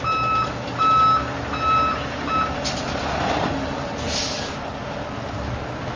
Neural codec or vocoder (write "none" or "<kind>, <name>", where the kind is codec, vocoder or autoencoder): none